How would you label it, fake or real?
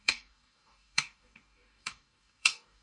fake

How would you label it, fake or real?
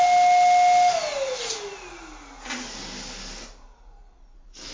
real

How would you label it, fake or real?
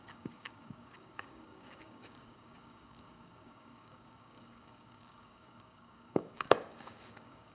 fake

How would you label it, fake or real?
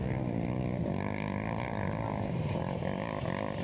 real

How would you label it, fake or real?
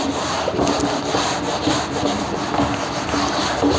real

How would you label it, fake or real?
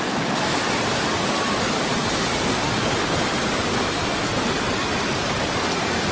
real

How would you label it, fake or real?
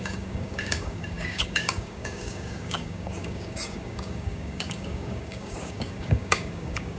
fake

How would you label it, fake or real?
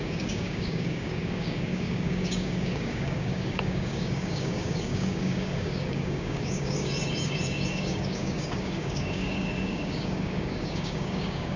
fake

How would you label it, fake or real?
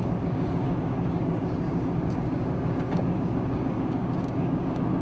fake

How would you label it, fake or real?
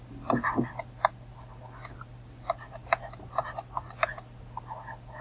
real